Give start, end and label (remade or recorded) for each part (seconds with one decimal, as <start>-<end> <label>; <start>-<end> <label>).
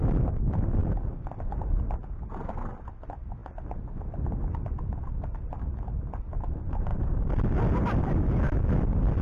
0.0-0.8 recorded; 0.8-1.8 remade; 1.8-6.9 recorded; 6.9-9.2 remade